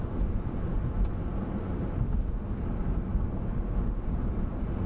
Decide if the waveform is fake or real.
real